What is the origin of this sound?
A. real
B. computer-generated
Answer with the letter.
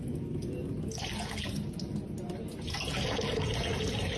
A